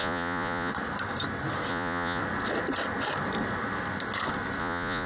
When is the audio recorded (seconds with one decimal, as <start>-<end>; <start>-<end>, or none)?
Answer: 0.7-1.7; 2.2-4.6